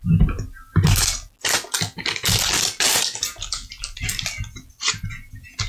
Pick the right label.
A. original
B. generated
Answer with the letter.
A